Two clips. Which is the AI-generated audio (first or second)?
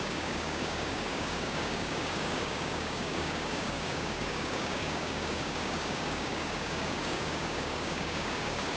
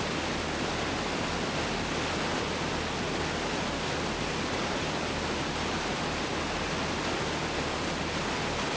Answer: first